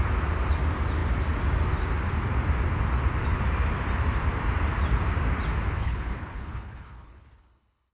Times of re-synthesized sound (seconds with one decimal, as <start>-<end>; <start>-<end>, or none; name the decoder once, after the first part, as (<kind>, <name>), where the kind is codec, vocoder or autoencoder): 5.8-7.9 (codec, HILCodec)